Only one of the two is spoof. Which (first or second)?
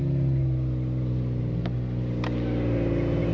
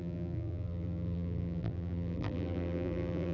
second